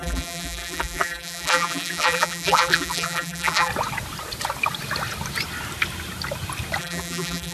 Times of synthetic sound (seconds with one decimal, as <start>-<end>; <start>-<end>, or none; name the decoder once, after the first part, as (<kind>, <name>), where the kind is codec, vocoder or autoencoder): 0.0-3.7 (vocoder, BigVGAN v2); 6.8-7.5